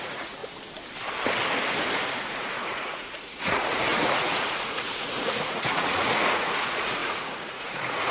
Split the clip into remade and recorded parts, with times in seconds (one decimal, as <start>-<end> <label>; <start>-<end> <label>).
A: 0.0-0.4 remade; 0.4-2.2 recorded; 2.2-8.1 remade